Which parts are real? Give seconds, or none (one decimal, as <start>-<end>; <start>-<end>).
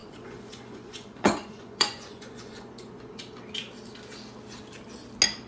3.2-5.5